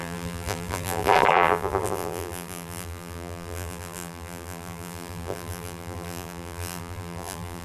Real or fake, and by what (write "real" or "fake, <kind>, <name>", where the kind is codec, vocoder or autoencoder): fake, vocoder, BigVGAN v2